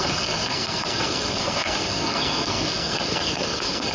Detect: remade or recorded remade